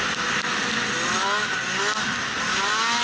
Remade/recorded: recorded